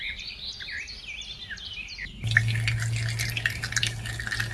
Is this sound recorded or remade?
recorded